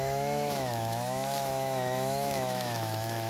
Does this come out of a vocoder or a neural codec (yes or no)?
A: yes